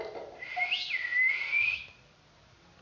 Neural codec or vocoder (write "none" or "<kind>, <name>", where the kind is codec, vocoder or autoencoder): none